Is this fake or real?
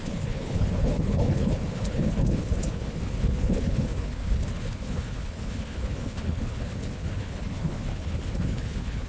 fake